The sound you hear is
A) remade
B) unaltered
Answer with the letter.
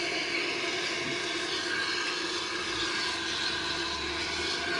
B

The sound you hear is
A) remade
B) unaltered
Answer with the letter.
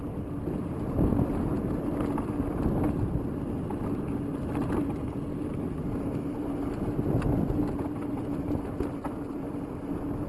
B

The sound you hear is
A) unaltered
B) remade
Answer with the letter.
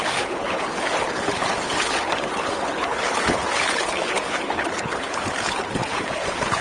B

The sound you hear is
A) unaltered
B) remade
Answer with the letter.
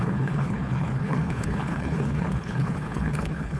B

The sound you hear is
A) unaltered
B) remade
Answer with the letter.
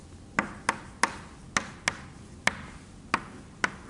A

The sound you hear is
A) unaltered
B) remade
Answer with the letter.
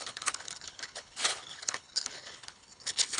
B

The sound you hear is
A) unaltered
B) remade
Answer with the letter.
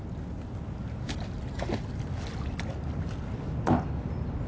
A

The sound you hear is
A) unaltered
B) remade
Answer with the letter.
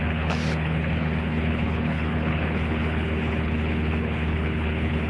B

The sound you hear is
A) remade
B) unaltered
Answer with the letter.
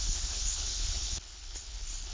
A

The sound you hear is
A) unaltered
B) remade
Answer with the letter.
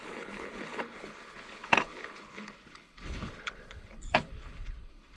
B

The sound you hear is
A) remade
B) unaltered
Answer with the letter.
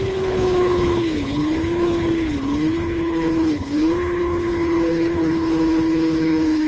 A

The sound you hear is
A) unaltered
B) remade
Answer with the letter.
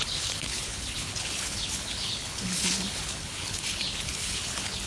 B